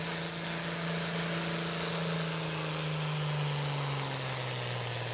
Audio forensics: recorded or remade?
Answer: recorded